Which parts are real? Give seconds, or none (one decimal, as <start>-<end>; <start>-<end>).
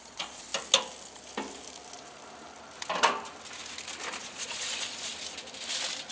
0.5-4.2; 5.1-6.1